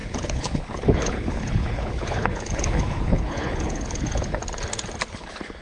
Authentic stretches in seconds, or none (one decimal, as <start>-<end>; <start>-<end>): 4.4-5.1